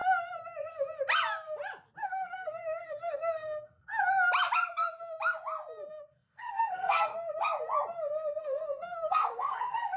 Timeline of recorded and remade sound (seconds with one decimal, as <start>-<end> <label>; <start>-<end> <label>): 0.0-2.0 recorded; 2.0-3.9 remade; 3.9-6.0 recorded; 6.0-7.1 remade; 7.1-8.4 recorded; 8.4-10.0 remade